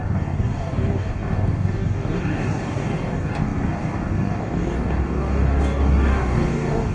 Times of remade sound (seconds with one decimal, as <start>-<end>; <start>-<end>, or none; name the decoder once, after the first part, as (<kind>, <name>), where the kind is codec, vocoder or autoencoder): 0.0-6.9 (codec, DAC)